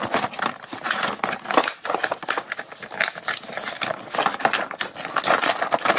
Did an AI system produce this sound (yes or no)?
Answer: no